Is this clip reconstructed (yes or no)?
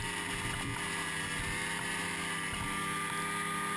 no